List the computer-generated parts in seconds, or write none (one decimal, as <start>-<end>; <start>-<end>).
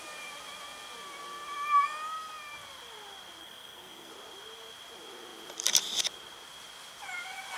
3.4-4.1